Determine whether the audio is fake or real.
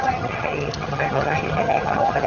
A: fake